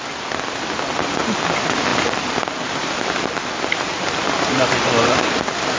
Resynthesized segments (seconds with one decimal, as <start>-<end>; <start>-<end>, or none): none